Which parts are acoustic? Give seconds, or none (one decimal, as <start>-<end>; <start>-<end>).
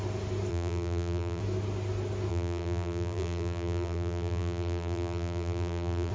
0.0-0.5; 1.4-2.3